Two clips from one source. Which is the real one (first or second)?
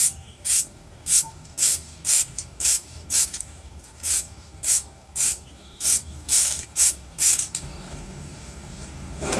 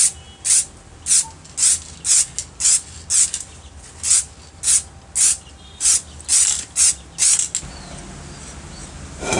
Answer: second